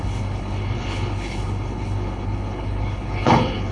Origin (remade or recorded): remade